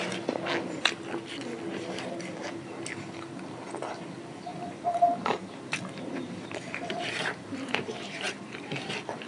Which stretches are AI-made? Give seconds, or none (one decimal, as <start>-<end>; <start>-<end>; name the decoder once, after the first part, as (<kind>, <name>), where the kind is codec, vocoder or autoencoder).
4.5-8.9 (vocoder, BigVGAN v2)